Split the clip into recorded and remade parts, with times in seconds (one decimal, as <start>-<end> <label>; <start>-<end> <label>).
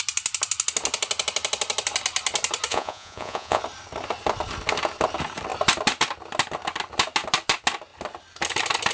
0.0-2.7 recorded; 2.7-3.6 remade; 3.6-8.9 recorded